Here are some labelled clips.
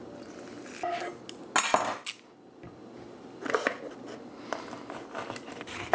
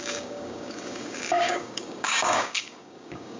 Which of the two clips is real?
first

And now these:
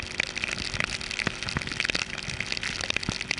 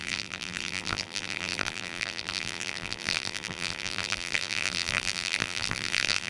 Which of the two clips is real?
first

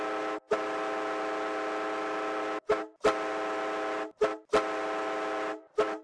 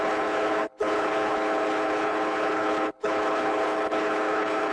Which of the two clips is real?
first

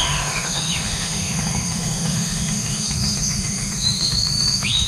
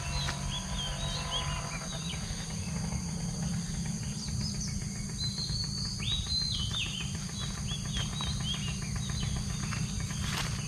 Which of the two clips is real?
second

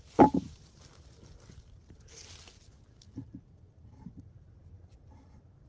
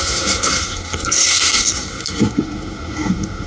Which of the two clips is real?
first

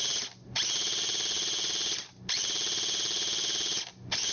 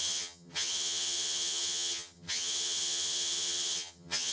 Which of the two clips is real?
first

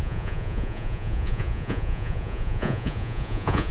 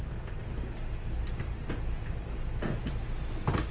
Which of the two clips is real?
second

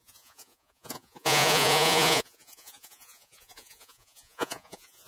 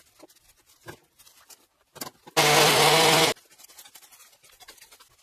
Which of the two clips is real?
second